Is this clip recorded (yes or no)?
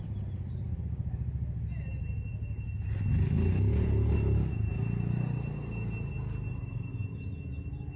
yes